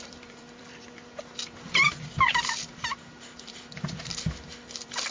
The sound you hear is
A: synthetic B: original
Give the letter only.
A